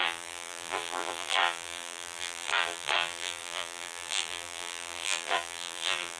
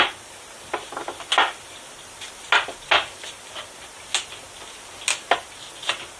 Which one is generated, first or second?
first